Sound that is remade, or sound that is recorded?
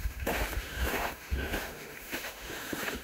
remade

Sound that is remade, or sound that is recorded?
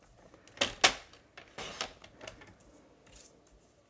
recorded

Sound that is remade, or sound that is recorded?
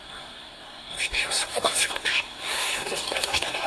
remade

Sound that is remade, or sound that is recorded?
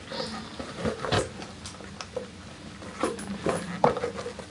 recorded